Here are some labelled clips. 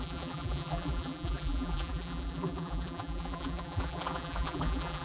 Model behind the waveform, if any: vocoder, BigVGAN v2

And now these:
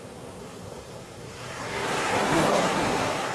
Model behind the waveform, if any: codec, SNAC